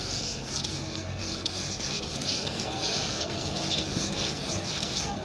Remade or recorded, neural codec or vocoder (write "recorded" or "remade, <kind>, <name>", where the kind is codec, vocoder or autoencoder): remade, codec, SNAC